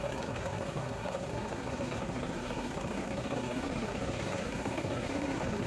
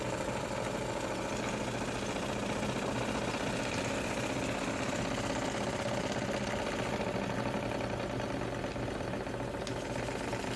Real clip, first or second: second